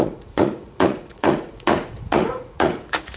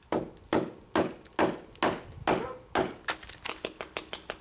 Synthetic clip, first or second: first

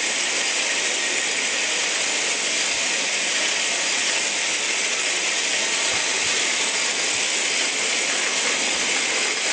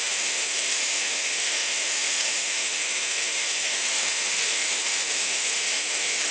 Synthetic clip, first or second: second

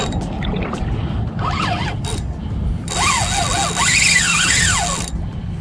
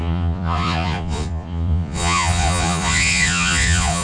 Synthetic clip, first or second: second